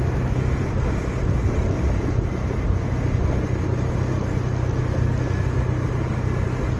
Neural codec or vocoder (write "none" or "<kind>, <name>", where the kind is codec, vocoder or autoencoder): none